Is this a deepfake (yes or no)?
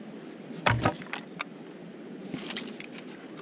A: no